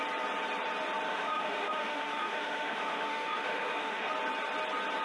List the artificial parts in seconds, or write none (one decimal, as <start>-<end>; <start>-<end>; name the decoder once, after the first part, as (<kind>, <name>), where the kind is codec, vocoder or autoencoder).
1.1-4.1 (autoencoder, DAC-VAE)